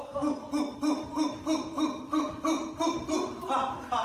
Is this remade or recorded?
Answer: remade